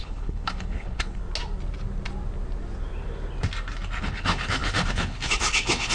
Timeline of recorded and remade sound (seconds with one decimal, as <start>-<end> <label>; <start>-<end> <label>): 0.0-1.2 remade; 1.2-4.0 recorded; 4.0-5.9 remade